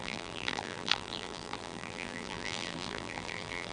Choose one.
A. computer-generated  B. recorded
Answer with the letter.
A